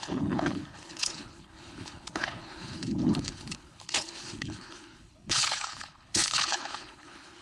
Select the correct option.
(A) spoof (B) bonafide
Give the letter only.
A